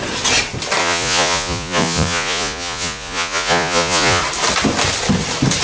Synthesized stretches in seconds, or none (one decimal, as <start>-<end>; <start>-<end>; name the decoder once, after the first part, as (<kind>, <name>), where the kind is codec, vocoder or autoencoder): 0.8-4.2 (vocoder, Vocos)